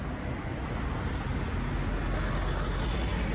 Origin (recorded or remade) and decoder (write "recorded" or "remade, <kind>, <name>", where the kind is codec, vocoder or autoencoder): recorded